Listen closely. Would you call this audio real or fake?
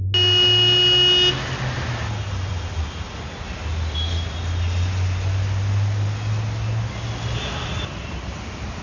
real